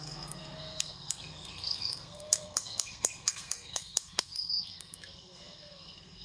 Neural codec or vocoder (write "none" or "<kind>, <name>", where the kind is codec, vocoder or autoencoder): codec, SNAC